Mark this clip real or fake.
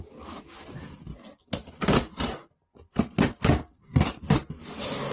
real